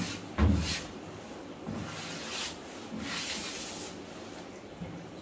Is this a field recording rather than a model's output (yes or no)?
yes